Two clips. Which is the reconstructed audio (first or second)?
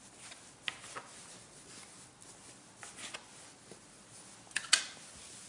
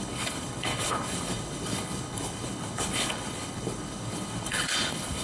second